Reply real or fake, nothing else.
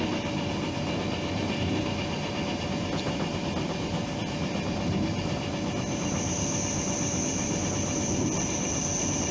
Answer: real